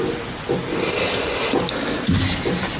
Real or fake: real